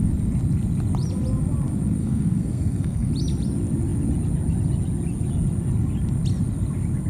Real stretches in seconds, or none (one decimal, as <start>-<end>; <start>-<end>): 0.0-2.0; 3.1-7.1